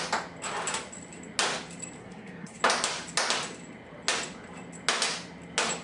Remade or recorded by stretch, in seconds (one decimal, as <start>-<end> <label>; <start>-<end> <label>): 0.0-2.0 recorded; 2.0-2.6 remade; 2.6-5.8 recorded